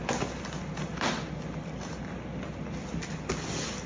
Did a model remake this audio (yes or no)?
no